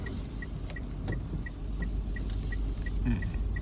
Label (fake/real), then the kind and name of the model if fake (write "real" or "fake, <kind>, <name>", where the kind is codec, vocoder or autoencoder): real